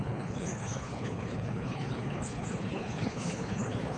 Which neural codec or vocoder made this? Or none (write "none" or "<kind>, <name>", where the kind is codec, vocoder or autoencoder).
codec, HILCodec